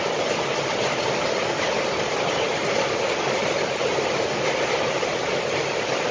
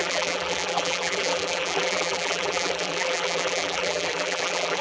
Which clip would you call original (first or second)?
first